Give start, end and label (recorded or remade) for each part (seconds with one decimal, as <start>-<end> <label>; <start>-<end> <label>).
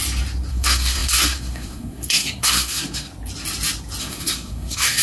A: 0.0-0.5 recorded; 0.5-3.1 remade; 3.1-4.0 recorded; 4.0-5.0 remade